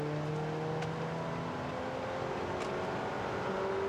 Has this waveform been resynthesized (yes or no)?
no